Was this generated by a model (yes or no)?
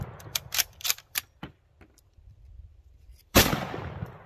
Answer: yes